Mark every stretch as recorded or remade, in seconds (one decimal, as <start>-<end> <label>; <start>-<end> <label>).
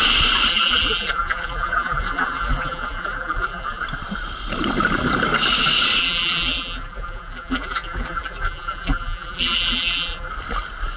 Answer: 0.0-0.5 recorded; 0.5-3.8 remade; 3.8-6.0 recorded; 6.0-10.3 remade; 10.3-11.0 recorded